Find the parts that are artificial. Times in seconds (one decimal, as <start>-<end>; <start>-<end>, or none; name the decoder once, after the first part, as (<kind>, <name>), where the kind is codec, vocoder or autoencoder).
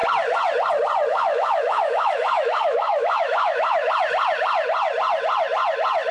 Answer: 1.1-3.9 (autoencoder, DAC-VAE)